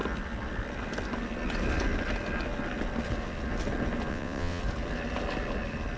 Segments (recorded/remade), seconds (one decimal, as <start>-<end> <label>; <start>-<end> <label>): 0.0-4.1 recorded; 4.1-4.6 remade; 4.6-6.0 recorded

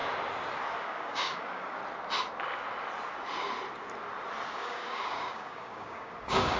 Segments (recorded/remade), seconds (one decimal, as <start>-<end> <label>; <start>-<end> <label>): 0.0-0.8 recorded; 0.8-1.8 remade; 1.8-4.5 recorded; 4.5-6.6 remade

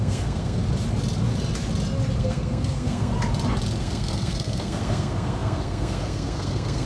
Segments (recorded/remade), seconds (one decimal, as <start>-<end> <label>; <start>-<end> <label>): 0.0-0.6 remade; 0.6-2.2 recorded; 2.2-3.1 remade; 3.1-3.8 recorded; 3.8-6.9 remade

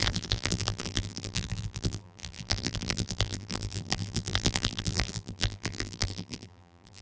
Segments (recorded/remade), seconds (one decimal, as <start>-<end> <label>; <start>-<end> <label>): 0.0-7.0 remade